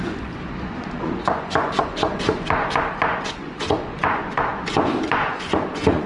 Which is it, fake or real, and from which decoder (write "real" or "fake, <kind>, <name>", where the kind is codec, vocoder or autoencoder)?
fake, vocoder, Vocos